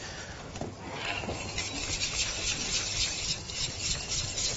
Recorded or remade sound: recorded